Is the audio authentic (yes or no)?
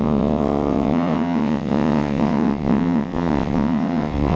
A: no